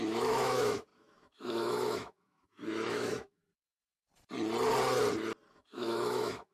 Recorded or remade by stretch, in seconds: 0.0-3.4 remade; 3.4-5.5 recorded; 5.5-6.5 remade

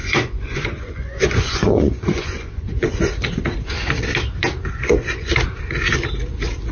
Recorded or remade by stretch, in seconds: 0.0-3.1 remade; 3.1-4.8 recorded; 4.8-5.3 remade; 5.3-6.7 recorded

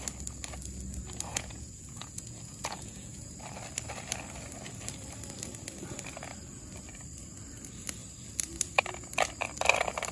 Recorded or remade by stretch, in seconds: 0.0-1.3 recorded; 1.3-3.3 remade; 3.3-10.1 recorded

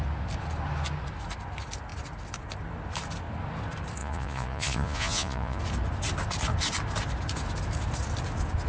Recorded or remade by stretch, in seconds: 0.0-4.0 recorded; 4.0-5.6 remade; 5.6-8.7 recorded